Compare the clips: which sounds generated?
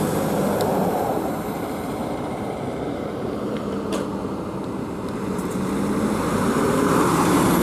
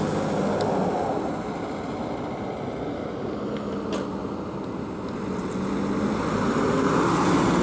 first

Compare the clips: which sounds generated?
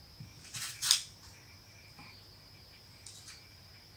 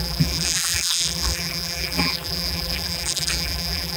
second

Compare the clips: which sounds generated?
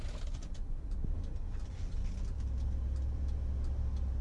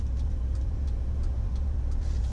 second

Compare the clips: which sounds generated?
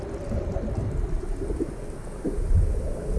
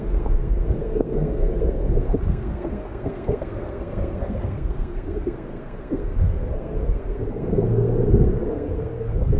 second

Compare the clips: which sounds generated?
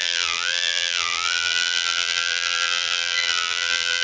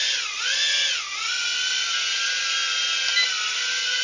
first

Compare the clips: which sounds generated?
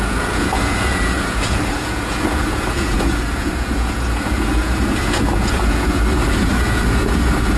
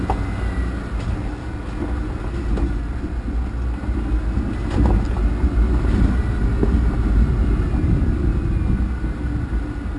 first